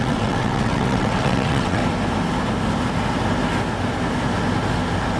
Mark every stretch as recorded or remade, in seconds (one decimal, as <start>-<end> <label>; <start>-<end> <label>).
0.0-1.8 remade; 1.8-5.2 recorded